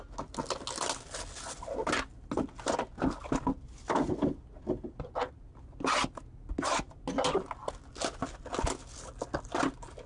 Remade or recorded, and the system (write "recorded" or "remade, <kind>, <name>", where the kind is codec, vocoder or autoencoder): recorded